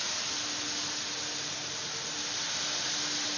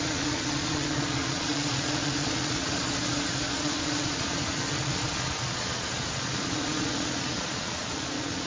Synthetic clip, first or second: second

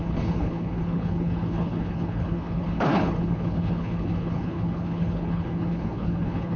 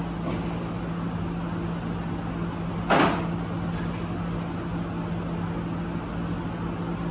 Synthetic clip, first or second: first